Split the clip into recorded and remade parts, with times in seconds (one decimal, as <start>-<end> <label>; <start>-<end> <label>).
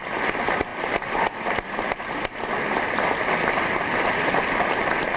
0.0-5.2 recorded